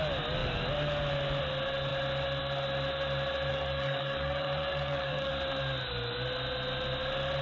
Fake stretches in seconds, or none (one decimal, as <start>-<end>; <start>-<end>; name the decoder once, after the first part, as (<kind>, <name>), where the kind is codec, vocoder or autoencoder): 3.5-5.3 (codec, DAC)